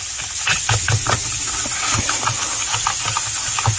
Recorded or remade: recorded